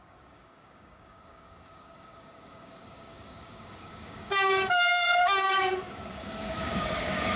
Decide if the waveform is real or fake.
fake